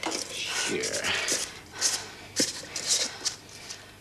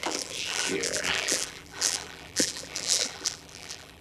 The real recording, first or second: first